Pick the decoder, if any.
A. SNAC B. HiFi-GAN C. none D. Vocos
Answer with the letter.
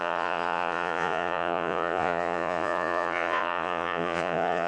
D